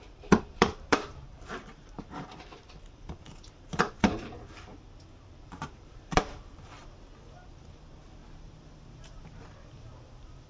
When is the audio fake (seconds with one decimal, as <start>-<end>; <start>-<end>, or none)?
0.0-4.7; 5.4-6.8; 7.5-8.2; 9.8-10.5